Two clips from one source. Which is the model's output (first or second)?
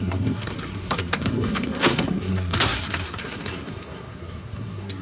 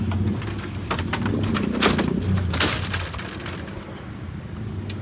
first